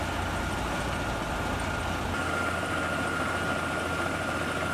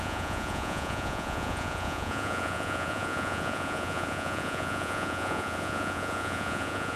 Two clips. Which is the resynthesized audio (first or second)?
second